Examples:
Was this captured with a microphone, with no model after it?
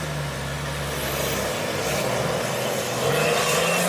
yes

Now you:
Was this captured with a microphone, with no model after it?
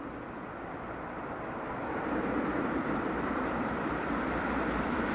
no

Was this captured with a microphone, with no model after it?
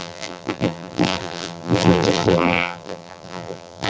no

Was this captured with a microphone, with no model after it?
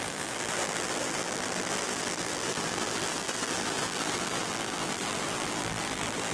no